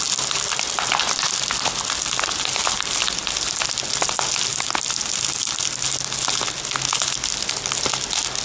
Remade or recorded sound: recorded